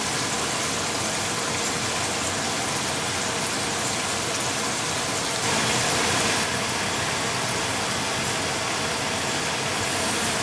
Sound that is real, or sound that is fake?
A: real